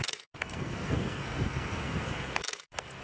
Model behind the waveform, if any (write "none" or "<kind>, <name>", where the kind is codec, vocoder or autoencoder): codec, SNAC